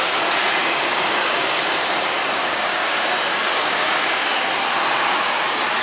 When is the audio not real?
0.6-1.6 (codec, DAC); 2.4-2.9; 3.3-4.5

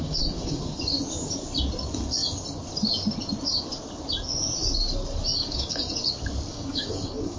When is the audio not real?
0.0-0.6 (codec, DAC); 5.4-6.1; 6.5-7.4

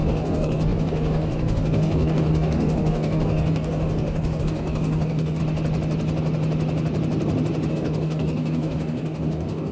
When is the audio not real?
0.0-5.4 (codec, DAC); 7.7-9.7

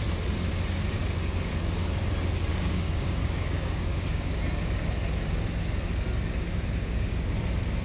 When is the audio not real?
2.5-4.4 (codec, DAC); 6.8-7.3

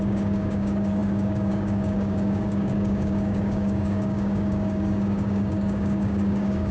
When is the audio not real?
0.0-6.7 (codec, DAC)

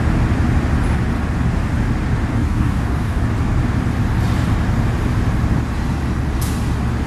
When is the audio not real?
2.3-3.2 (codec, DAC)

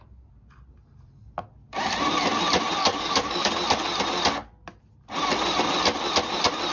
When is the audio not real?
2.8-3.5 (codec, DAC)

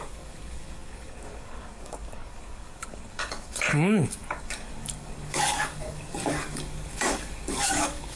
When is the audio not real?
0.0-8.2 (codec, DAC)